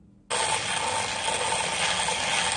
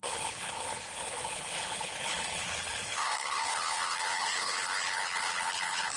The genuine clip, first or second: first